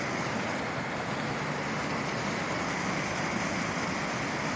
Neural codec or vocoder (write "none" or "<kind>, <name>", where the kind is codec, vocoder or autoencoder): none